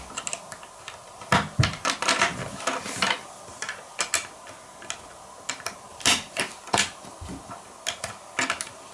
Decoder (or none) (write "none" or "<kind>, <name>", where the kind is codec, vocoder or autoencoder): none